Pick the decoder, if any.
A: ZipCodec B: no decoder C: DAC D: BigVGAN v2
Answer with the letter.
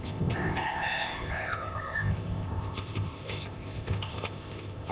A